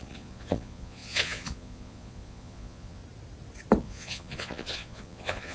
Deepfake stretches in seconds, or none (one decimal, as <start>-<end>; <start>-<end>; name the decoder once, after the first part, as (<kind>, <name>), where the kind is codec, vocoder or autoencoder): 0.0-3.0 (vocoder, Vocos); 3.8-5.5